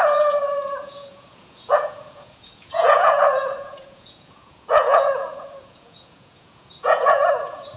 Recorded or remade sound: remade